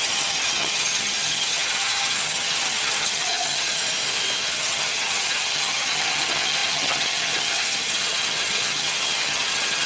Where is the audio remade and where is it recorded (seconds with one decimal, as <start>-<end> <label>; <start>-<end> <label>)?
0.0-3.8 remade; 3.8-4.4 recorded; 4.4-9.9 remade